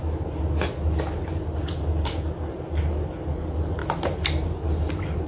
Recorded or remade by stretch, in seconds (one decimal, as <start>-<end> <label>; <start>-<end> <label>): 0.0-5.3 recorded